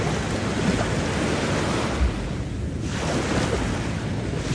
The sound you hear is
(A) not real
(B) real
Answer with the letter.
B